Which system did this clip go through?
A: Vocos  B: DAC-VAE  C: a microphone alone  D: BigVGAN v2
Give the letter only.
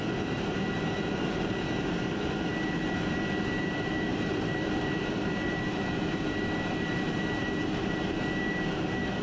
D